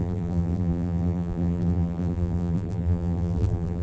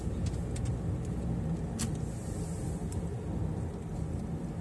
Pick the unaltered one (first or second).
second